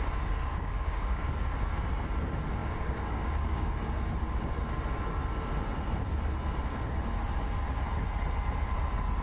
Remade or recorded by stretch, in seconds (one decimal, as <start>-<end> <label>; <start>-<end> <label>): 0.0-0.5 recorded; 0.5-1.2 remade; 1.2-2.6 recorded; 2.6-3.7 remade; 3.7-9.2 recorded

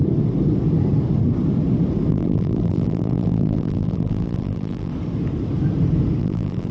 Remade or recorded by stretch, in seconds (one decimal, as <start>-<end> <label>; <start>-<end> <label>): 0.0-2.1 recorded; 2.1-4.9 remade; 4.9-6.2 recorded; 6.2-6.7 remade

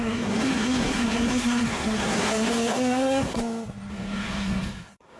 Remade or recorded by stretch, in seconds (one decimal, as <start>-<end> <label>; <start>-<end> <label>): 0.0-3.4 remade; 3.4-3.9 recorded; 3.9-5.2 remade

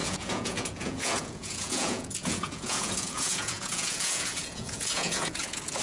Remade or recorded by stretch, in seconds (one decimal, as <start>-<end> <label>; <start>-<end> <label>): 0.0-5.8 remade

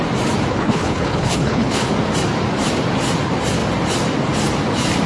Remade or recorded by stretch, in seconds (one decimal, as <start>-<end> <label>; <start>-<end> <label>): 0.0-0.5 recorded; 0.5-1.9 remade; 1.9-5.1 recorded

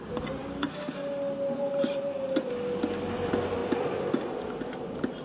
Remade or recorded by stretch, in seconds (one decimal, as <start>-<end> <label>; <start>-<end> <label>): 0.0-0.4 recorded; 0.4-0.9 remade; 0.9-5.2 recorded

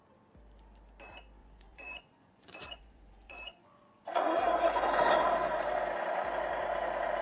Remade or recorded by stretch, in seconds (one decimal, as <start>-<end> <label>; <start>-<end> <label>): 0.0-1.4 recorded; 1.4-5.1 remade; 5.1-7.2 recorded